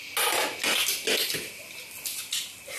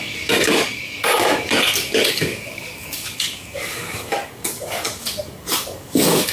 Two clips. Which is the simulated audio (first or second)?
second